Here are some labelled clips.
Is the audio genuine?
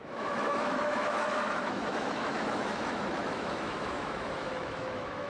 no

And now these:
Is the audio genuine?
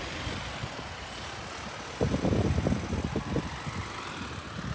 yes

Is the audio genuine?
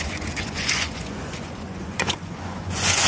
no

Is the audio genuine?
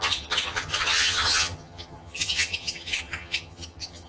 no